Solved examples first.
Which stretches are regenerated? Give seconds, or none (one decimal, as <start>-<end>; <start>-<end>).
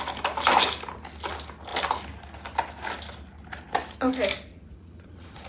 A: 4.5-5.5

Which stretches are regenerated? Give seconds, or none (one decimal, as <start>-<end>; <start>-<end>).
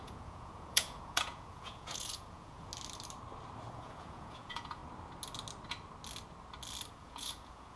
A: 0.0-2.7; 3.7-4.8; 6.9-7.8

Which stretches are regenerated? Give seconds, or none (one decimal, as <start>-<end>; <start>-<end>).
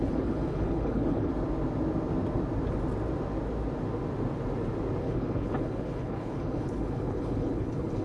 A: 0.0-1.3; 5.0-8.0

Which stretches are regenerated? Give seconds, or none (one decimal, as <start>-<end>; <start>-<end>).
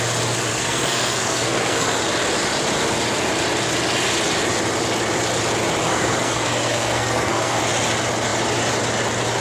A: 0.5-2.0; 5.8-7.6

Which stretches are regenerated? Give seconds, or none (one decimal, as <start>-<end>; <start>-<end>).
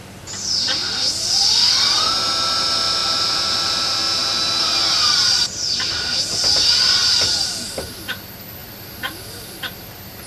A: 3.0-6.3; 7.0-8.0